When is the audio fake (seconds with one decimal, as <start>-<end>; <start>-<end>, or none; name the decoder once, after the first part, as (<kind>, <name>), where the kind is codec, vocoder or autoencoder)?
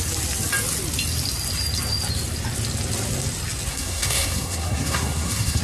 3.7-5.6 (codec, SNAC)